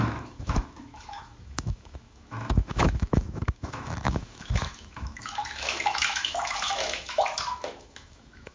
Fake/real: fake